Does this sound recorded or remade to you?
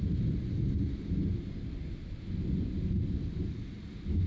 recorded